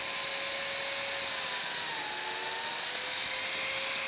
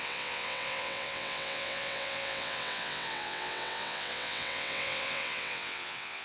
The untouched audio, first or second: first